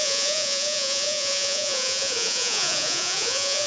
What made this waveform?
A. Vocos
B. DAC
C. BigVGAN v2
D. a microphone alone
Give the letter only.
A